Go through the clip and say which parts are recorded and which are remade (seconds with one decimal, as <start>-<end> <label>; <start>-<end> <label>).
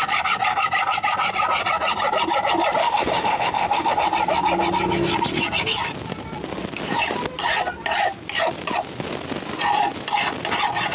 0.0-2.8 recorded; 2.8-3.9 remade; 3.9-10.9 recorded